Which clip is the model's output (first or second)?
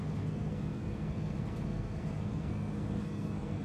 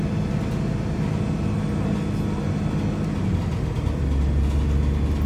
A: first